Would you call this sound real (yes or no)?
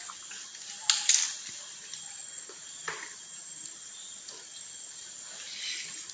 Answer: yes